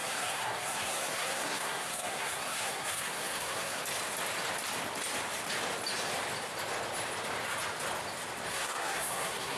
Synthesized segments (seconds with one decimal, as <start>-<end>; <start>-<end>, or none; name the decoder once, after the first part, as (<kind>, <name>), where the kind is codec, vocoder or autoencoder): 0.0-3.8 (codec, SNAC); 8.5-9.6